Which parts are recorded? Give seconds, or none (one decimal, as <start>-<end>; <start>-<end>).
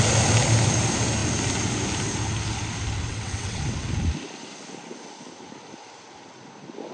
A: 0.0-3.1; 3.6-6.9